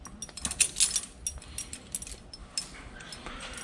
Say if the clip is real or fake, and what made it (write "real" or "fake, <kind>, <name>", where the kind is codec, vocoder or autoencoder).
real